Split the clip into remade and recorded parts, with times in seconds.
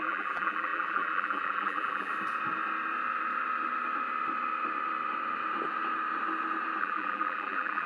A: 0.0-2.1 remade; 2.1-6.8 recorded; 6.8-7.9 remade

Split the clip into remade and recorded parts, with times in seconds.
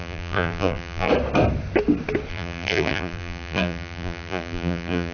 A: 0.0-1.1 remade; 1.1-2.3 recorded; 2.3-5.1 remade